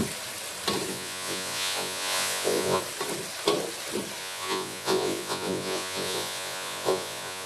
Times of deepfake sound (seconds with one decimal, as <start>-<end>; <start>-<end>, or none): 0.9-2.8; 4.2-7.5